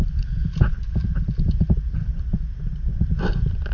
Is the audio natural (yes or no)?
yes